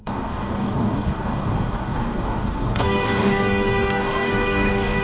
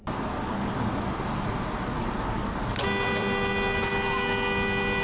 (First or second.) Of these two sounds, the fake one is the first